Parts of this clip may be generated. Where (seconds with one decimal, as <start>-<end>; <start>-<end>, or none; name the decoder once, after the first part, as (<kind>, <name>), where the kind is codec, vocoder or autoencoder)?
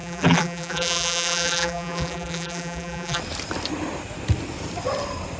0.0-3.2 (vocoder, BigVGAN v2)